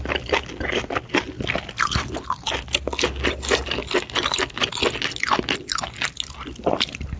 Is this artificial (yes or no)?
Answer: no